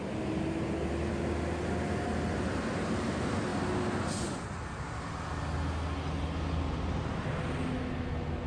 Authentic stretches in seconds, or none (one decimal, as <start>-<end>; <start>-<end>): 0.0-8.5